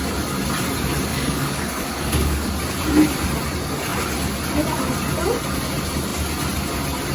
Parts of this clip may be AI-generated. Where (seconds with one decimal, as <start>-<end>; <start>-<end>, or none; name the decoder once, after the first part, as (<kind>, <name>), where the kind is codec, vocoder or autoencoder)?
1.1-2.5 (codec, DAC)